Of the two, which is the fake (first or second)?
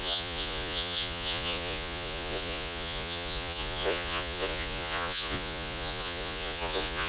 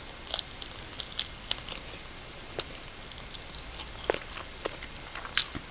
first